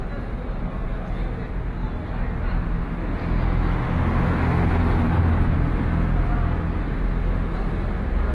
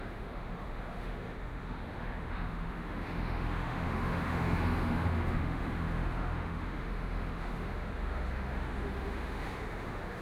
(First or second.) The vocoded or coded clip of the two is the second